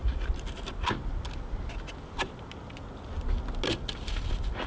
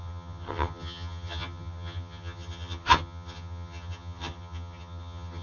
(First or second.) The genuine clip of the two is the first